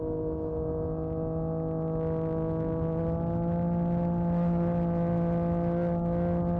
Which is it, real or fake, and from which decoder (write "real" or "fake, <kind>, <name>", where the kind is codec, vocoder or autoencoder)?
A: real